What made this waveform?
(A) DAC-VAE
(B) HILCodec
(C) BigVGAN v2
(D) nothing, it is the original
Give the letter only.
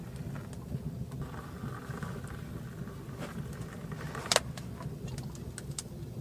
D